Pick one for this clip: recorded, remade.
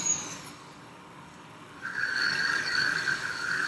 remade